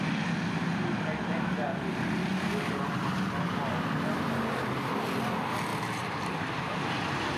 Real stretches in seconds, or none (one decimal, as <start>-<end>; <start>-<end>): 0.0-2.3; 3.1-5.7; 6.8-7.4

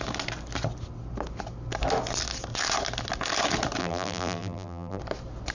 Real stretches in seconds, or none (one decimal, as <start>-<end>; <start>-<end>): 0.0-3.8; 5.0-5.5